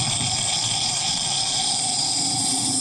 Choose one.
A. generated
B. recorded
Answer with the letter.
A